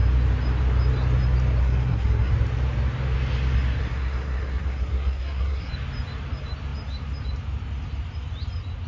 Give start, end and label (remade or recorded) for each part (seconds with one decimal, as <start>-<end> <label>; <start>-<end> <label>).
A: 0.0-1.6 recorded; 1.6-2.3 remade; 2.3-3.8 recorded; 3.8-5.7 remade; 5.7-8.9 recorded